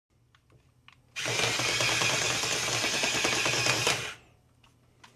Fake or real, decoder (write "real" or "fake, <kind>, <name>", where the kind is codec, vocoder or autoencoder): real